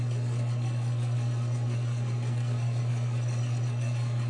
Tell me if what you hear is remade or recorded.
remade